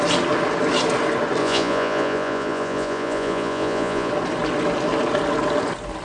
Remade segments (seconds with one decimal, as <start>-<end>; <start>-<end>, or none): 1.4-4.1